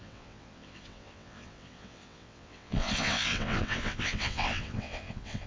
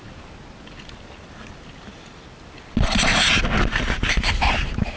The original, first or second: second